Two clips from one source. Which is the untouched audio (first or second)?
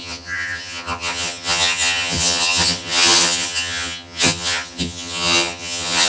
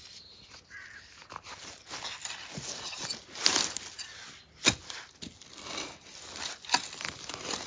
second